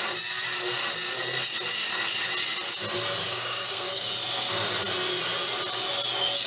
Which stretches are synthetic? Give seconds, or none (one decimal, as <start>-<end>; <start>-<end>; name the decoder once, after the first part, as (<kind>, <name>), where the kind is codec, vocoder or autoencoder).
3.3-4.1 (codec, SNAC)